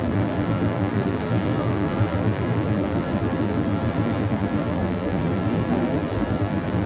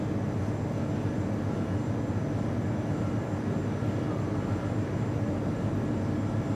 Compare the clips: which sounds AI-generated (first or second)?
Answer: first